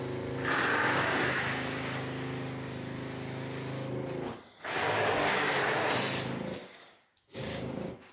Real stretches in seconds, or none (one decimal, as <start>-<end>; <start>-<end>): 0.0-0.7; 1.2-4.8; 5.5-6.6